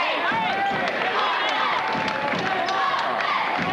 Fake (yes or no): no